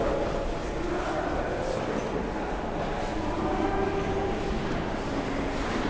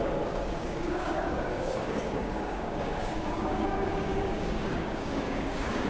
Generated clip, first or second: second